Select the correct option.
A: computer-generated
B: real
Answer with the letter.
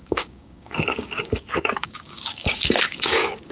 A